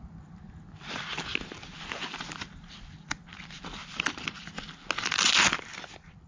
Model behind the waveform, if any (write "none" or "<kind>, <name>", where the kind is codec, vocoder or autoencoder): none